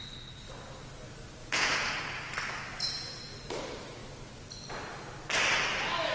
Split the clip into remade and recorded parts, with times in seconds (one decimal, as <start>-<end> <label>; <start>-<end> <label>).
0.0-1.4 recorded; 1.4-2.0 remade; 2.0-6.1 recorded